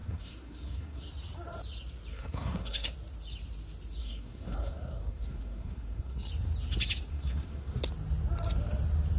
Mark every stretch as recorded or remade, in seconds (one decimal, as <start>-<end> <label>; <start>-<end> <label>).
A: 0.0-1.1 remade; 1.1-2.1 recorded; 2.1-2.9 remade; 2.9-4.0 recorded; 4.0-6.3 remade; 6.3-7.1 recorded; 7.1-7.8 remade; 7.8-9.2 recorded